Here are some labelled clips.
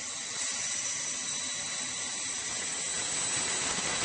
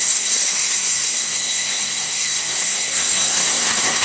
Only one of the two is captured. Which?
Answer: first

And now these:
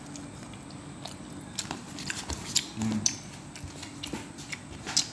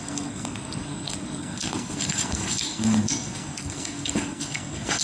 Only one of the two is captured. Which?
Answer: first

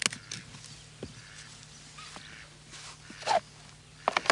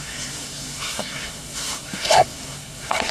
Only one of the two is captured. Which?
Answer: first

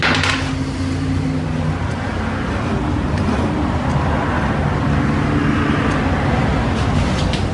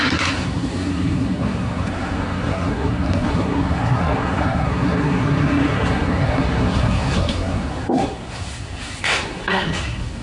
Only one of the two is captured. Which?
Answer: first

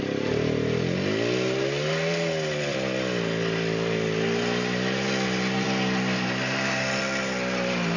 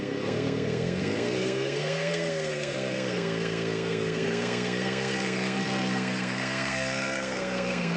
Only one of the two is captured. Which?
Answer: first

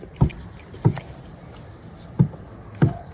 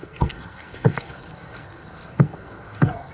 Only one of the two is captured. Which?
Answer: first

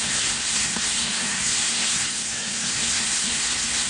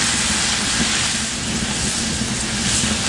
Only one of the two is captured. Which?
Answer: second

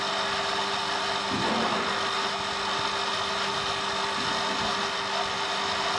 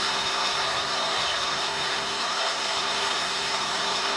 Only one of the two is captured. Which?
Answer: first